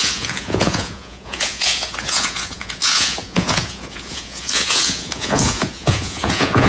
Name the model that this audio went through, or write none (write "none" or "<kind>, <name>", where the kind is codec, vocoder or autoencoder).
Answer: vocoder, Vocos